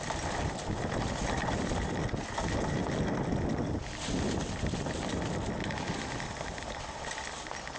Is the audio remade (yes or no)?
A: no